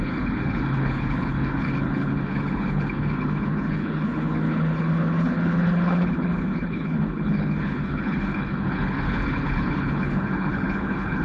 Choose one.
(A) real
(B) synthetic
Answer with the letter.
B